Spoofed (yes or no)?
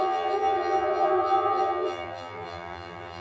yes